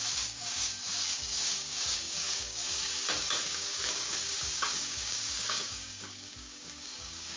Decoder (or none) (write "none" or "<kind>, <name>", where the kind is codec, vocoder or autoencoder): codec, DAC